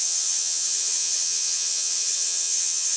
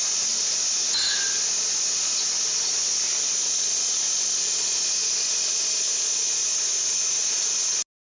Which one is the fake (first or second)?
first